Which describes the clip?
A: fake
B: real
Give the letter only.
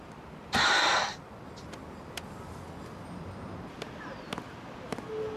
B